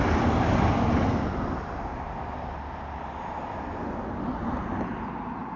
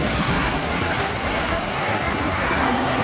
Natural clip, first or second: first